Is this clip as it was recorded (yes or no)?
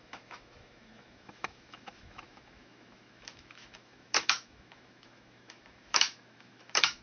no